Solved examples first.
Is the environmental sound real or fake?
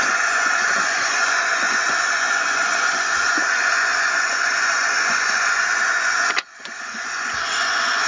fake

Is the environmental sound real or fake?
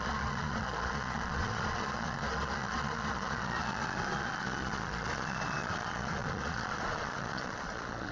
fake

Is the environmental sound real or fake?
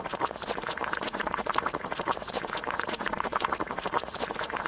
fake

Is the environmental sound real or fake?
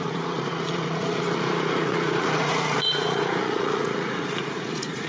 fake